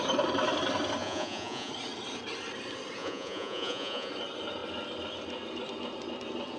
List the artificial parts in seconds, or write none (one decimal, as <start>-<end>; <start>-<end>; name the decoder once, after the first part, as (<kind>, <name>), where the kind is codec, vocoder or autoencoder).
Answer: 1.0-1.7 (vocoder, Vocos); 3.0-4.1